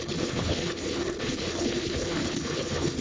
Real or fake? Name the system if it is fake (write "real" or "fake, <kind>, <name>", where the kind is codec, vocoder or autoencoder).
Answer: fake, codec, HILCodec